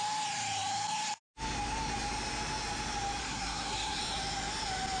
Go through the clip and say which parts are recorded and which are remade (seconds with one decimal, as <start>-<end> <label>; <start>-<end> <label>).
0.0-3.2 recorded; 3.2-4.0 remade; 4.0-5.0 recorded